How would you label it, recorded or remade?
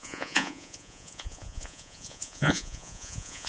remade